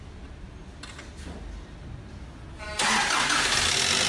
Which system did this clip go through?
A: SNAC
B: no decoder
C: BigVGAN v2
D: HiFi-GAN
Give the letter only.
B